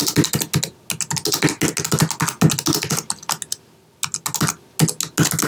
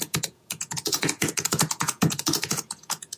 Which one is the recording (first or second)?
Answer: first